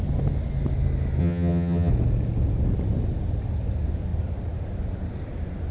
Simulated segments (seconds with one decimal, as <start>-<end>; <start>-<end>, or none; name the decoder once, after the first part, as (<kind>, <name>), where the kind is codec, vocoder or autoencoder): 1.2-1.9 (vocoder, HiFi-GAN)

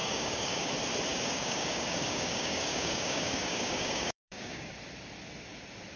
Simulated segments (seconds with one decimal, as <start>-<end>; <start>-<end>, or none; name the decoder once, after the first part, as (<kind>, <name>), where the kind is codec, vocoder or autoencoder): 0.0-0.7 (codec, DAC); 1.1-4.7

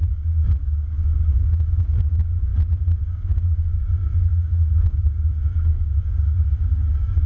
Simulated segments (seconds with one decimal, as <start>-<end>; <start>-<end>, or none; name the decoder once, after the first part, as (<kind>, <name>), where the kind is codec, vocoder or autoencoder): 0.0-2.5 (codec, DAC); 3.0-7.3

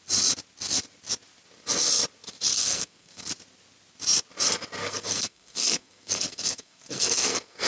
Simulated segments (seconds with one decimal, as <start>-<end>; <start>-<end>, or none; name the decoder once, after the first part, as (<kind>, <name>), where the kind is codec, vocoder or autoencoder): 2.5-3.3 (codec, SNAC); 4.8-7.7

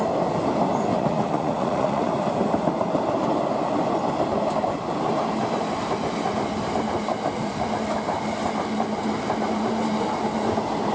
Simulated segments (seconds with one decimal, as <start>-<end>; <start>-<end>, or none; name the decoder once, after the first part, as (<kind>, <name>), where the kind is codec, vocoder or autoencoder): 0.9-2.1 (vocoder, Vocos)